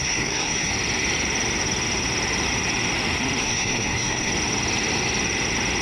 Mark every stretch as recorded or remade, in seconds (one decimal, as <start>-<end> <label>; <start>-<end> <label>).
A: 0.0-0.7 remade; 0.7-3.4 recorded; 3.4-4.3 remade; 4.3-5.8 recorded